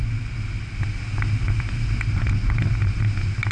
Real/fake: real